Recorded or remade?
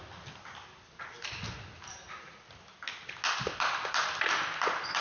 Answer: recorded